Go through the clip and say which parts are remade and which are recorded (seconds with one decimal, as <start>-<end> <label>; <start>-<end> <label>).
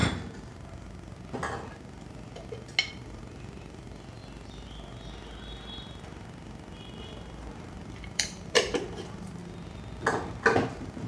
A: 0.0-2.9 recorded; 2.9-4.2 remade; 4.2-7.0 recorded; 7.0-9.4 remade; 9.4-10.7 recorded; 10.7-11.1 remade